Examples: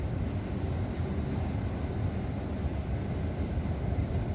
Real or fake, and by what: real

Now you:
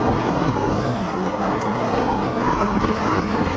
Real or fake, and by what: fake, codec, SNAC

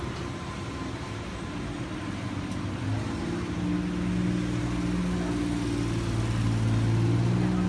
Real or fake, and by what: real